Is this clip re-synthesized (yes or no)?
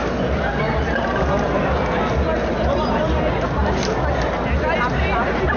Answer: no